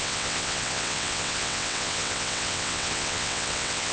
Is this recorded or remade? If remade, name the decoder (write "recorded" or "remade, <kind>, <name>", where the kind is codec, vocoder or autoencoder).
remade, vocoder, WaveNeXt